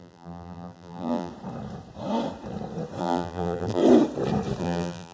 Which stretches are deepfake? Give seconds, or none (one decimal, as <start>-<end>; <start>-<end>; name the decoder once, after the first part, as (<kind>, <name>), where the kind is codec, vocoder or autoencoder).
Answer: 0.0-1.3 (vocoder, BigVGAN v2); 3.0-3.8; 4.6-5.1